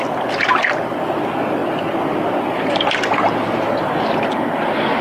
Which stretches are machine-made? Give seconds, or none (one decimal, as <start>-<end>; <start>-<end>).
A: none